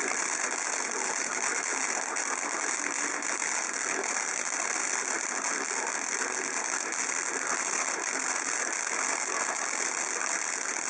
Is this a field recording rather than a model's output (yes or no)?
yes